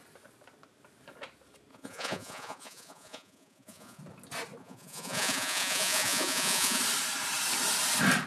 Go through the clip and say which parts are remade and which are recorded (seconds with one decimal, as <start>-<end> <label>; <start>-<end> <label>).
0.0-1.7 recorded; 1.7-4.0 remade; 4.0-4.6 recorded; 4.6-6.8 remade; 6.8-8.3 recorded